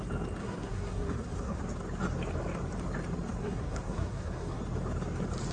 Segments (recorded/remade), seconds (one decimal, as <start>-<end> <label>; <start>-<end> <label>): 0.0-0.4 recorded; 0.4-1.6 remade; 1.6-3.4 recorded; 3.4-4.6 remade; 4.6-5.5 recorded